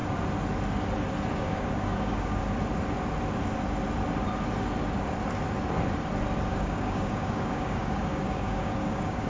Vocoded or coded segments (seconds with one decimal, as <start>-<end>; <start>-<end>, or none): 1.3-2.4; 6.5-9.3